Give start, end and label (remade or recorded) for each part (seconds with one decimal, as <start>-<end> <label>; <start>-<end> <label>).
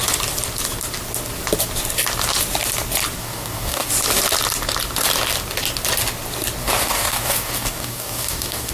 0.0-3.2 recorded; 3.2-3.9 remade; 3.9-6.6 recorded; 6.6-8.7 remade